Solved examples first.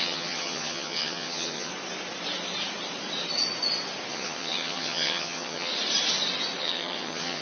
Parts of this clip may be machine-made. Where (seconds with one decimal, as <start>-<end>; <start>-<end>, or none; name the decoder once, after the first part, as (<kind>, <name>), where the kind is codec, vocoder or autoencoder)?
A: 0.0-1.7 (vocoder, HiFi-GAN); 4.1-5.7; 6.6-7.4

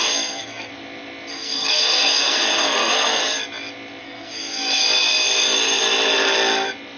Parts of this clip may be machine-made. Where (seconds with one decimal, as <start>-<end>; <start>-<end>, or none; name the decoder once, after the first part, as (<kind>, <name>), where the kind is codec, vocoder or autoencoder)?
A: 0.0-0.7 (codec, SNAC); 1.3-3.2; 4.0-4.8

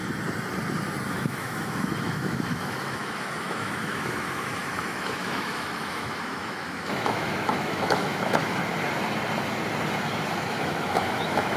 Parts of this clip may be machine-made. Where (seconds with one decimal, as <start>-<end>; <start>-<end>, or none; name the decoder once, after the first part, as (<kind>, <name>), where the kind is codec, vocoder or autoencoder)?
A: 1.1-8.6 (autoencoder, DAC-VAE); 10.4-11.6

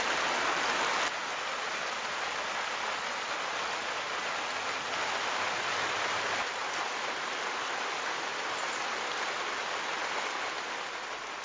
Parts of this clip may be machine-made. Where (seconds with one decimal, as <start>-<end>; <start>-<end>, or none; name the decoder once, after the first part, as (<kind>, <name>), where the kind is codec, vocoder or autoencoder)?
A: 6.6-10.8 (vocoder, BigVGAN v2)

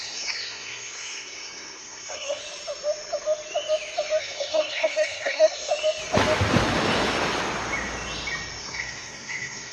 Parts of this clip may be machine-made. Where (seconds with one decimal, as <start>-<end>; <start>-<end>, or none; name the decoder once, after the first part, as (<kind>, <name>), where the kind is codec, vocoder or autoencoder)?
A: 0.0-2.4 (codec, SNAC); 4.2-5.7; 8.6-9.7

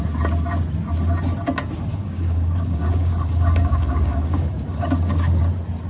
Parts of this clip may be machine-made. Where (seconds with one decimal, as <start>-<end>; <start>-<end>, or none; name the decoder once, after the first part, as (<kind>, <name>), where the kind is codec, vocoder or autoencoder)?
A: 1.9-5.4 (codec, DAC)

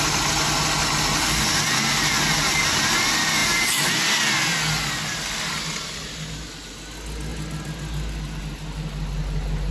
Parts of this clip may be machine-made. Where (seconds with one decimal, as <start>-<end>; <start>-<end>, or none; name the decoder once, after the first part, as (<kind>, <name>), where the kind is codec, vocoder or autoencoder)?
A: none

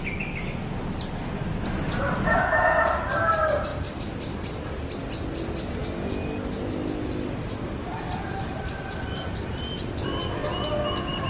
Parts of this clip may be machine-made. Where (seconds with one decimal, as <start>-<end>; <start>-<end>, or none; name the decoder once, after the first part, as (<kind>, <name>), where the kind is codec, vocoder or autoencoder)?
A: 3.7-4.7 (vocoder, BigVGAN v2); 7.9-9.6